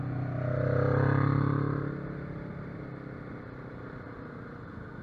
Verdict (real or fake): real